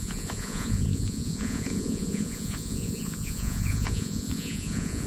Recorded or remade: remade